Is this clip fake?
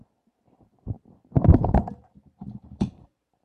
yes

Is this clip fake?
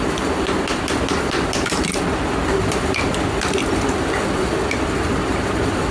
yes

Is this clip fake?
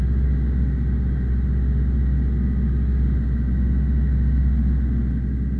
no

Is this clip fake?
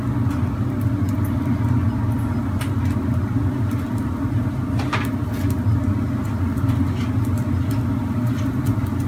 no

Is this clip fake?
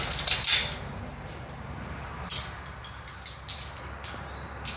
no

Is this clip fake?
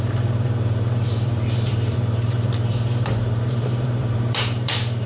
yes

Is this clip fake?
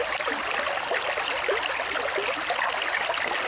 no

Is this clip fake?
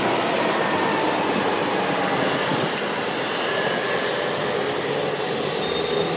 no